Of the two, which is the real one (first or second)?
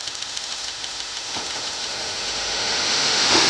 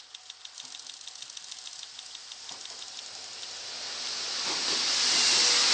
second